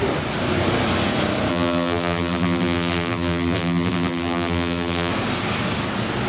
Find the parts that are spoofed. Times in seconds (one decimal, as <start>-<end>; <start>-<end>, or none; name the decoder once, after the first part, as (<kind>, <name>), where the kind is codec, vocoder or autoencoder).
1.5-5.1 (vocoder, BigVGAN v2)